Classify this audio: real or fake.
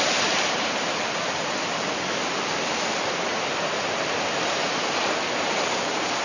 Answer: real